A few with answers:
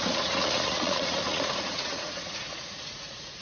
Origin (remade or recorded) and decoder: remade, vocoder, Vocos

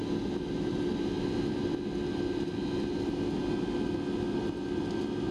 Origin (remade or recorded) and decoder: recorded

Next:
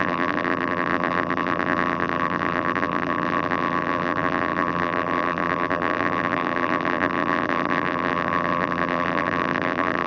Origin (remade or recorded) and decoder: remade, vocoder, BigVGAN v2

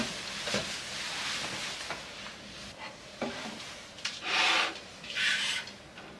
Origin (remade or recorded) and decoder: recorded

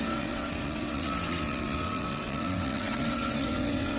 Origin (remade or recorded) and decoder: remade, vocoder, WaveNeXt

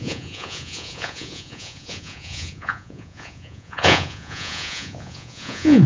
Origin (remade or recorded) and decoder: remade, vocoder, Vocos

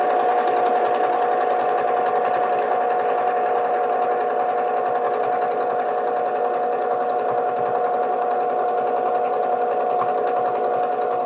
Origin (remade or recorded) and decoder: recorded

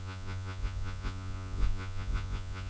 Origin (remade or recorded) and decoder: remade, vocoder, Vocos